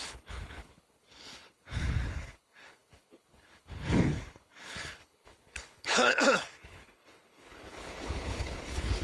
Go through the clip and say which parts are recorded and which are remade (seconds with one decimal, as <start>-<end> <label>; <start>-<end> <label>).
0.0-9.0 remade